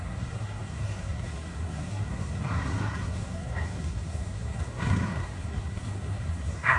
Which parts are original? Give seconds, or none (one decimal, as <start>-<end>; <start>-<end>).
none